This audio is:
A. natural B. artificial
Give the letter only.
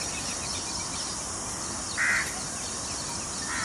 A